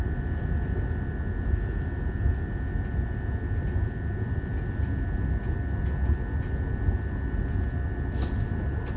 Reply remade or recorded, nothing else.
recorded